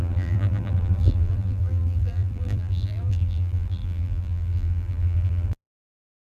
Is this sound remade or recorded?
remade